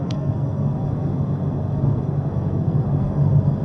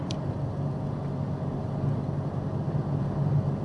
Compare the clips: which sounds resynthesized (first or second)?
first